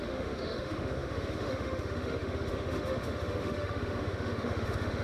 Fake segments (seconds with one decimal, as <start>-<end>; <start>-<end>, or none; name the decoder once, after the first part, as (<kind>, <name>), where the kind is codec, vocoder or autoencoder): 0.0-5.0 (autoencoder, DAC-VAE)